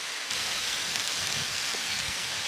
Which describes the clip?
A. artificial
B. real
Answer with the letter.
A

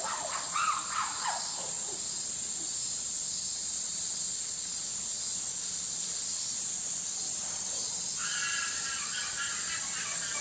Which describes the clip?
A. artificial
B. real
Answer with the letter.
B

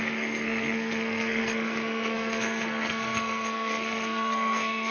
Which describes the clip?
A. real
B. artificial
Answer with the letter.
B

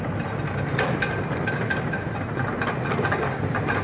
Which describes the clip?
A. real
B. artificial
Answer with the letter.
A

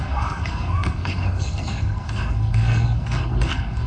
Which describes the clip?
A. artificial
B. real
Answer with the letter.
A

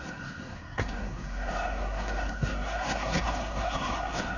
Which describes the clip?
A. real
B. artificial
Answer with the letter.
B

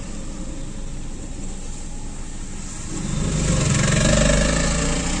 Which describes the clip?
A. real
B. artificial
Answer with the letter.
A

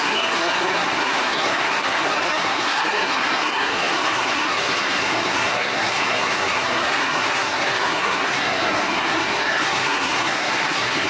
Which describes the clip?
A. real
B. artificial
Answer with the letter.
B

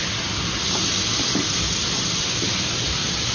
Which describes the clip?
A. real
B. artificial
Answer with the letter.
A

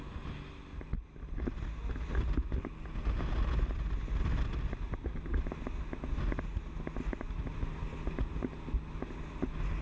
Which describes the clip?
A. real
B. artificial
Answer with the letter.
A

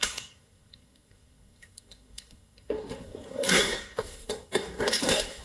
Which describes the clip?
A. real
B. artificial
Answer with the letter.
B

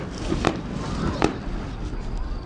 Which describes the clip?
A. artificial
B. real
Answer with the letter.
B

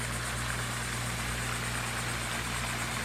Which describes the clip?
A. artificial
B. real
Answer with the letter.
B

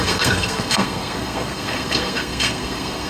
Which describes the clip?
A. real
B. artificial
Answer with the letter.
B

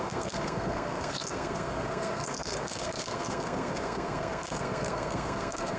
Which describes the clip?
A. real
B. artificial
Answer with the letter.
B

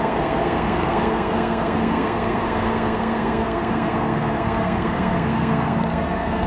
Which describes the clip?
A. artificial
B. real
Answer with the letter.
A